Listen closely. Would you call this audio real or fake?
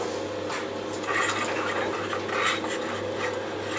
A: real